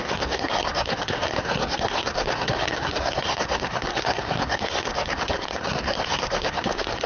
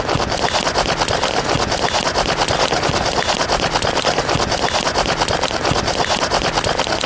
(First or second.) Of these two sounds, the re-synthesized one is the first